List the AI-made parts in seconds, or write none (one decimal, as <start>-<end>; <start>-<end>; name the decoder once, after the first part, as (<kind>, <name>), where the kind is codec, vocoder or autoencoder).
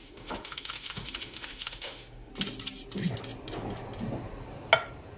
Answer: 0.0-2.3 (autoencoder, DAC-VAE)